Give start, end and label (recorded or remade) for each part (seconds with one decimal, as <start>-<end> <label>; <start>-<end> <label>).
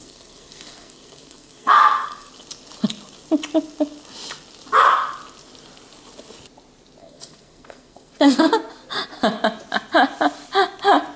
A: 0.0-2.3 remade; 2.3-7.0 recorded; 7.0-8.5 remade; 8.5-11.2 recorded